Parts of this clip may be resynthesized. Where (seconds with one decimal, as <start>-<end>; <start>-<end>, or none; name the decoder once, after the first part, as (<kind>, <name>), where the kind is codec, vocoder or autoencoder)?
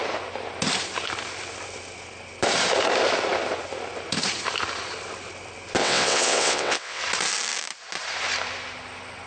5.8-7.0 (vocoder, WaveNeXt)